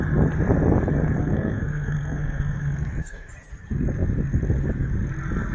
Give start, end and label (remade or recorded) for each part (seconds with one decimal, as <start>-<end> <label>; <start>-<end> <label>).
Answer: 0.0-1.2 recorded; 1.2-3.3 remade; 3.3-5.5 recorded